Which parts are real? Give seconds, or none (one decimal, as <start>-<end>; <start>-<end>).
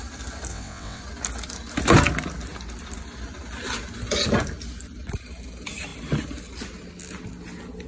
0.0-0.5; 1.0-7.9